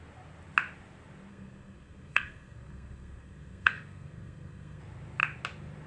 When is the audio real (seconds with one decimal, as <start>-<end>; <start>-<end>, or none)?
0.0-1.3; 4.8-5.9